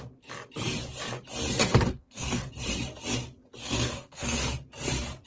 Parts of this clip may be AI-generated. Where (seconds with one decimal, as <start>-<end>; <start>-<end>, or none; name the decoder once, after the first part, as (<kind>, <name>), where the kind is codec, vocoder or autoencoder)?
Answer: 1.7-2.5 (codec, SNAC); 3.6-4.4